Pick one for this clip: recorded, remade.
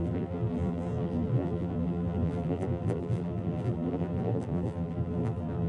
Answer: remade